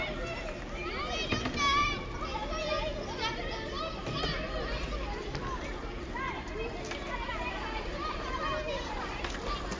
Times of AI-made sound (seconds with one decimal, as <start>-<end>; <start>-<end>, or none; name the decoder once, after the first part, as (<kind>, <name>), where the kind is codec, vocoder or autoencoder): none